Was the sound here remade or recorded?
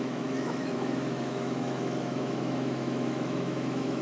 remade